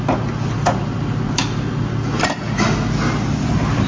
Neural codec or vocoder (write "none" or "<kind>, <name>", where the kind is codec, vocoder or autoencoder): none